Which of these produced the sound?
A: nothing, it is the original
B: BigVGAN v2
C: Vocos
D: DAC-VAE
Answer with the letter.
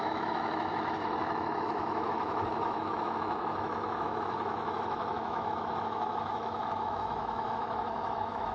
D